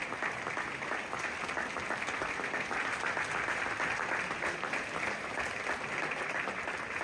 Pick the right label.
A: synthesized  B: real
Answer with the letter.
B